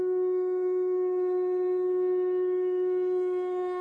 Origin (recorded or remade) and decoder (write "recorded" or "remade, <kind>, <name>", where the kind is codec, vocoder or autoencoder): remade, codec, SNAC